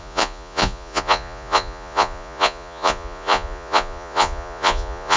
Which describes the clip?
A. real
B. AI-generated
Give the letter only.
B